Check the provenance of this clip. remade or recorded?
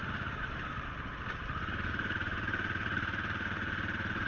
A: recorded